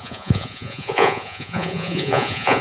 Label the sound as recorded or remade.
remade